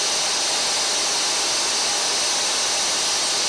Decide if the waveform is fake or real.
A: real